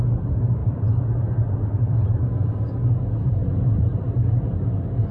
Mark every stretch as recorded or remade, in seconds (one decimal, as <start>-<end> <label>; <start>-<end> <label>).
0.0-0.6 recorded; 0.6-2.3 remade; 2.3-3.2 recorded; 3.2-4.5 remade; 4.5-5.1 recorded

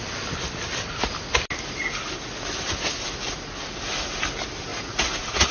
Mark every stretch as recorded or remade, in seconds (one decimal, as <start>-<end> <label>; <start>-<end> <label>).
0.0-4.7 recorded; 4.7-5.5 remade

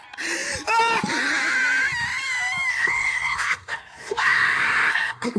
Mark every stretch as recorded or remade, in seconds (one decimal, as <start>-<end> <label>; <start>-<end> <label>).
0.0-2.7 recorded; 2.7-5.4 remade

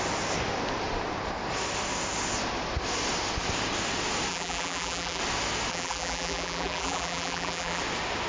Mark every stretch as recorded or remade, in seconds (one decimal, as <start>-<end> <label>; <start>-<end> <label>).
0.0-4.3 recorded; 4.3-5.2 remade; 5.2-5.7 recorded; 5.7-7.8 remade; 7.8-8.3 recorded